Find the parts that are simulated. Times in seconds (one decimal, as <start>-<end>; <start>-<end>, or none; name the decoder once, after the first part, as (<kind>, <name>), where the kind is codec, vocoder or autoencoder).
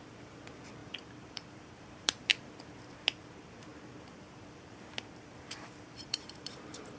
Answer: 0.0-2.3 (vocoder, BigVGAN v2); 2.9-7.0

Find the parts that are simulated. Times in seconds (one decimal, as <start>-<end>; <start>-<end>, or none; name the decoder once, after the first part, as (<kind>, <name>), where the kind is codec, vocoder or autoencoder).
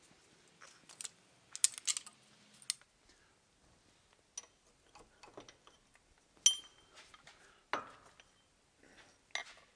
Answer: none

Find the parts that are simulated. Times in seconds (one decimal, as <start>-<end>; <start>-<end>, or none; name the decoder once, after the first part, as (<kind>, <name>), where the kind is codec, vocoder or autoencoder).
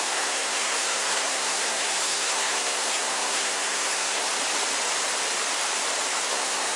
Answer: 0.0-4.3 (codec, SNAC); 6.3-6.8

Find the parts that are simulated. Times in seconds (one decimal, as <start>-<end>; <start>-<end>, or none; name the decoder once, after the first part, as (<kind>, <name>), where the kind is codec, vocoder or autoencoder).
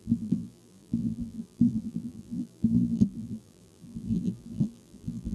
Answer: 0.0-5.3 (vocoder, BigVGAN v2)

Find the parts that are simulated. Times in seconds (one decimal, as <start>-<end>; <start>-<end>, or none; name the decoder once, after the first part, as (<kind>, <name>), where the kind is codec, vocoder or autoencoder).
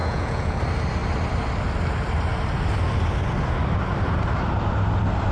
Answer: 0.0-0.6 (vocoder, Vocos)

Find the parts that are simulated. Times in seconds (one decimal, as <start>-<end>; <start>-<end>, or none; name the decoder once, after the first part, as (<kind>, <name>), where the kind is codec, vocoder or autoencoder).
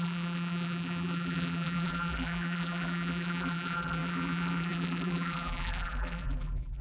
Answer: 0.0-6.8 (vocoder, BigVGAN v2)